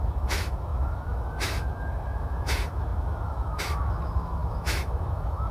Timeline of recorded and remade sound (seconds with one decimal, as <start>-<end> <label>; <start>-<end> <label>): 0.0-5.5 remade